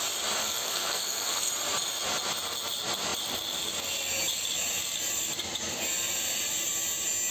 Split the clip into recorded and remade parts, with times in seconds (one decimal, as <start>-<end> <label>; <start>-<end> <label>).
0.0-0.4 recorded; 0.4-1.5 remade; 1.5-7.3 recorded